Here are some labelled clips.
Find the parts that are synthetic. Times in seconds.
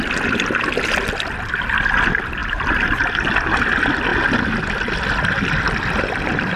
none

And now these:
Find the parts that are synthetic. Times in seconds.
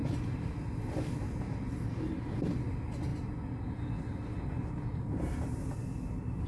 none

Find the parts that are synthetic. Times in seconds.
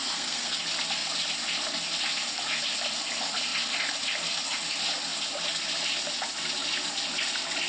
0.0-0.6 (codec, SNAC)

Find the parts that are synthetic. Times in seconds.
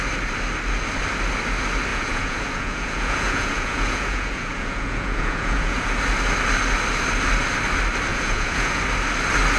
1.9-6.0 (vocoder, Vocos); 8.1-8.8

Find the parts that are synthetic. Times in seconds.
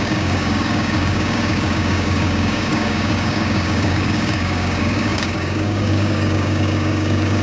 0.0-7.4 (codec, DAC)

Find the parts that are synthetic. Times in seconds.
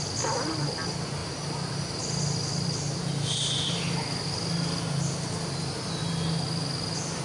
none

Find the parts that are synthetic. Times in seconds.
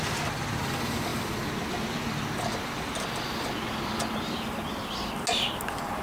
none